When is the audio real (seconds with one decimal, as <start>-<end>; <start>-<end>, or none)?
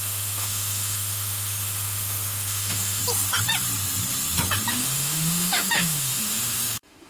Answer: 3.0-4.7